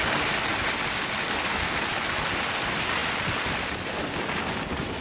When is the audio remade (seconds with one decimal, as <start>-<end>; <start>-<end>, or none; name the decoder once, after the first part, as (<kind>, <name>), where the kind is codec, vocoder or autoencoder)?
3.0-3.8 (vocoder, BigVGAN v2)